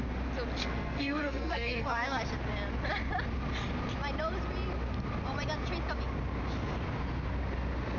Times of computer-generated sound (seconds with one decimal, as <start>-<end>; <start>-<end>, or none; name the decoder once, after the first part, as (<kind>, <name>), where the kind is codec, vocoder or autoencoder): 0.6-2.2 (codec, SNAC)